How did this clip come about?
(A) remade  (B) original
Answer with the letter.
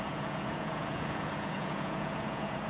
A